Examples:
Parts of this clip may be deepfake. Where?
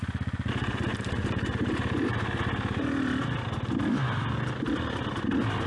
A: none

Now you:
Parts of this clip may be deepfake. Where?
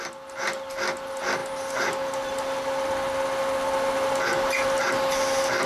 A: none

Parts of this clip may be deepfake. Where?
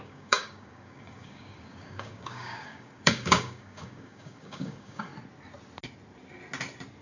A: 0.0-5.1 (codec, DAC)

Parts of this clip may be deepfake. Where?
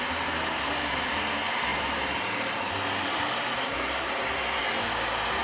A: 0.0-4.6 (vocoder, BigVGAN v2)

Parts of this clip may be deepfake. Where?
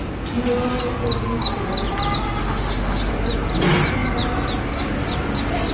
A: 2.4-3.1 (autoencoder, DAC-VAE)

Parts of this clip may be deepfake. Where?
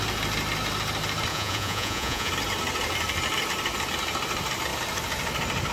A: 1.3-2.3 (vocoder, Vocos)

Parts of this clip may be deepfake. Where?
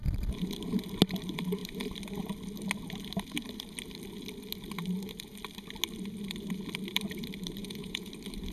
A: 7.6-8.1 (vocoder, Vocos)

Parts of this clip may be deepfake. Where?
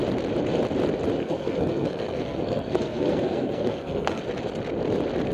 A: 1.2-4.2 (codec, SNAC)